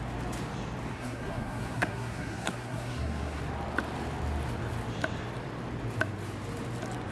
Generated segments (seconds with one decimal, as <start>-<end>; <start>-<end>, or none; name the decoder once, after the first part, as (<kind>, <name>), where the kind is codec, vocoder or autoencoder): 0.9-3.4 (codec, SNAC)